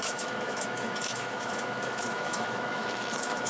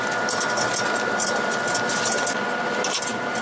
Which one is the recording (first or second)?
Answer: second